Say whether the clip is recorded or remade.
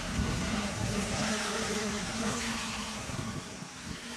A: remade